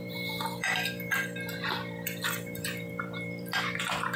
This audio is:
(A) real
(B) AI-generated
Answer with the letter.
B